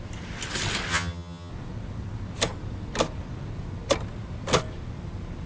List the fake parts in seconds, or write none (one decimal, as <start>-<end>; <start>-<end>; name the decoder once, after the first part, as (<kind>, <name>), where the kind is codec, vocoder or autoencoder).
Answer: 0.9-1.5 (vocoder, HiFi-GAN)